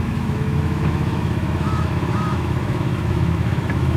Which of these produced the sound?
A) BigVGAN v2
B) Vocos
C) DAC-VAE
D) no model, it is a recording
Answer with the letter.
C